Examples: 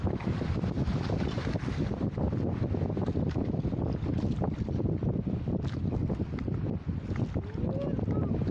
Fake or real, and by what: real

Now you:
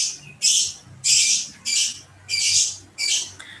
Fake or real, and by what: real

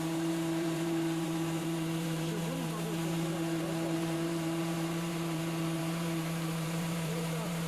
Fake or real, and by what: fake, vocoder, BigVGAN v2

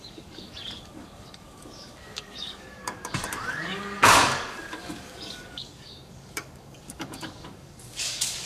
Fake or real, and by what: fake, codec, DAC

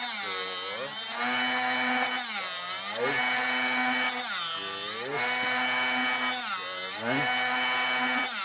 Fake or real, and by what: real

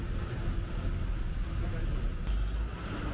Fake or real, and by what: real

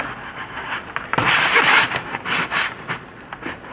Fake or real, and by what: real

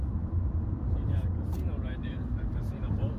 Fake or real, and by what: fake, vocoder, BigVGAN v2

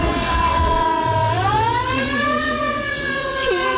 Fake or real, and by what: fake, vocoder, WaveNeXt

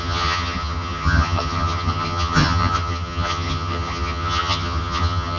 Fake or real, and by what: fake, vocoder, HiFi-GAN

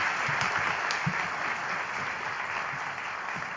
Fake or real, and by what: real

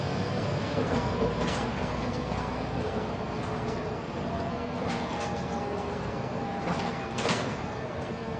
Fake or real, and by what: fake, codec, SNAC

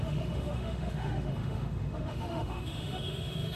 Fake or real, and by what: fake, autoencoder, DAC-VAE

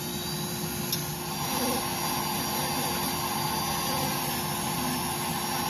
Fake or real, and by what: real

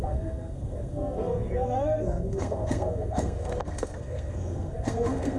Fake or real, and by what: fake, codec, SNAC